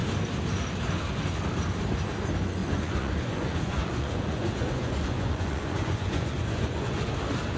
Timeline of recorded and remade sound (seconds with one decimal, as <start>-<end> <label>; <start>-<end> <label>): 0.0-2.6 recorded; 2.6-7.1 remade; 7.1-7.6 recorded